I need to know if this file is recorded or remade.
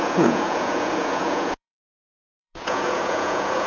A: remade